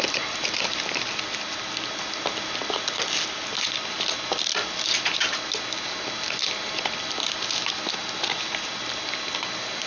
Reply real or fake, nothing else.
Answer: real